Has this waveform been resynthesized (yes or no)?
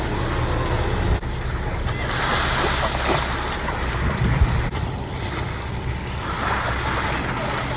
no